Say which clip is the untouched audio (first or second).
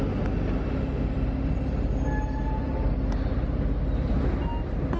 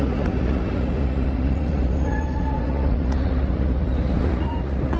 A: first